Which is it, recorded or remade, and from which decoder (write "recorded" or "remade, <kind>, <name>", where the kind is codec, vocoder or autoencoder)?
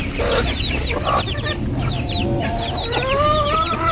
recorded